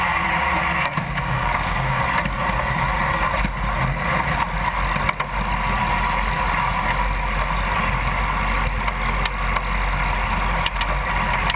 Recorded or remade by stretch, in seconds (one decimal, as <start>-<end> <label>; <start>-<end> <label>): 0.0-0.7 recorded; 0.7-2.0 remade; 2.0-11.6 recorded